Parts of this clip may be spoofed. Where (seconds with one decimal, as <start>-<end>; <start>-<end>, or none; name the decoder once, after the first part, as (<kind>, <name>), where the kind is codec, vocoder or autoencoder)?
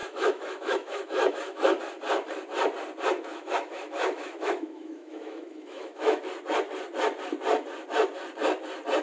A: 0.0-1.8 (autoencoder, DAC-VAE); 3.3-6.2